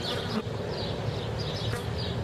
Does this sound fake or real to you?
real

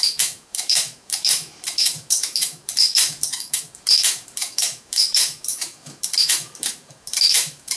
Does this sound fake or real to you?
fake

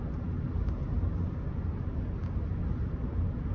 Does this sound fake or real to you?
real